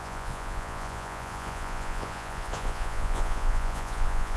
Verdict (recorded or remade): remade